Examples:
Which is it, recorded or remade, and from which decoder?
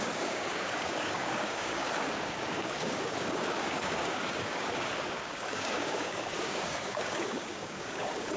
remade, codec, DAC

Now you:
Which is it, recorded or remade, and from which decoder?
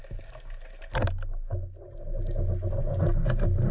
recorded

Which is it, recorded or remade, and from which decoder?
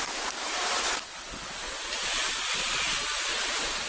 recorded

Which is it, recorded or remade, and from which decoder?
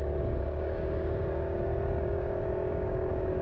remade, codec, DAC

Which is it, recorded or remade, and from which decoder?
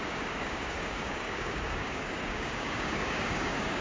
remade, codec, DAC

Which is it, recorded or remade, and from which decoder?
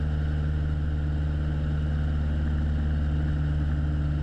recorded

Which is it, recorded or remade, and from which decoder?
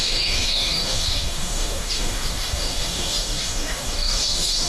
remade, codec, DAC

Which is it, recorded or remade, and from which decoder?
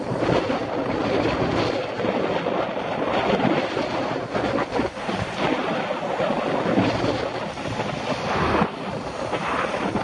recorded